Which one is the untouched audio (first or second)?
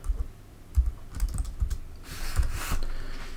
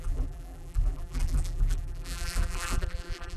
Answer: first